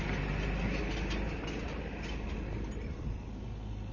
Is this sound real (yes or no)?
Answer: yes